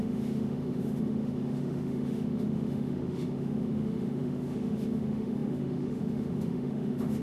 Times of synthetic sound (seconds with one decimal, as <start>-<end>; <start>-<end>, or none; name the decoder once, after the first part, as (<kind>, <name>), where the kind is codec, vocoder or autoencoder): 0.0-7.2 (autoencoder, DAC-VAE)